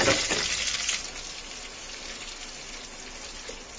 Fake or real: real